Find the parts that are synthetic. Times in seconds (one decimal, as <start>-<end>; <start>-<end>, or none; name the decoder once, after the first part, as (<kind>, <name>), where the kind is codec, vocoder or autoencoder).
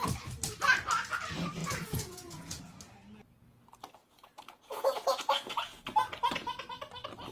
1.6-2.6 (vocoder, Vocos); 4.0-5.8